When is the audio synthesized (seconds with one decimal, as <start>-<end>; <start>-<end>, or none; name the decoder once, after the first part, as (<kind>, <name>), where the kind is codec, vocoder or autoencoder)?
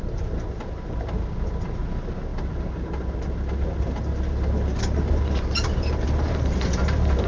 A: none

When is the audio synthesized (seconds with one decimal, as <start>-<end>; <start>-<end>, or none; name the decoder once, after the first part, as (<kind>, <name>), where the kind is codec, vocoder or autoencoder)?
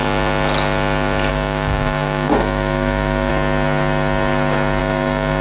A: 1.3-3.3 (codec, DAC); 4.8-5.4